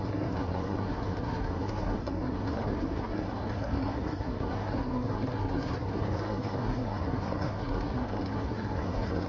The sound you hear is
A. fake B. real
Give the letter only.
A